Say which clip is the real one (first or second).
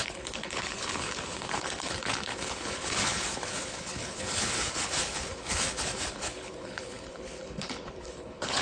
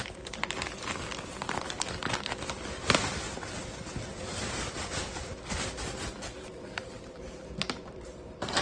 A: second